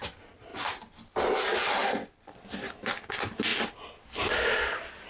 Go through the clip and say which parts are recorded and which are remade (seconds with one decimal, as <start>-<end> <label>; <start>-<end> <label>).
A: 0.0-5.1 recorded